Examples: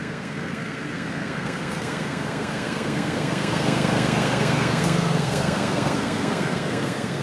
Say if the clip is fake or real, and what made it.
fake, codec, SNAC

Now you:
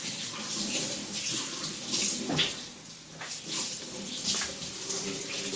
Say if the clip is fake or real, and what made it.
real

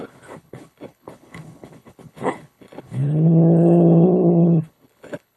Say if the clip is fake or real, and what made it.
fake, codec, HILCodec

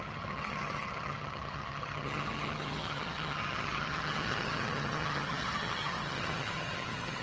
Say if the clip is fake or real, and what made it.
fake, vocoder, HiFi-GAN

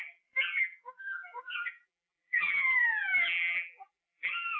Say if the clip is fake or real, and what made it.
fake, vocoder, BigVGAN v2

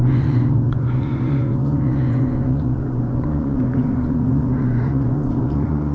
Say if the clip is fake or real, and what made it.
fake, vocoder, Vocos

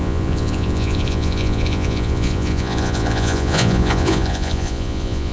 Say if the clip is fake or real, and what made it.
fake, vocoder, Vocos